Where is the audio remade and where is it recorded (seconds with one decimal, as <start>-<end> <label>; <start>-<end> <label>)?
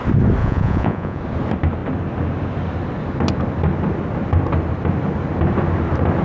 0.0-0.4 recorded; 0.4-1.2 remade; 1.2-6.2 recorded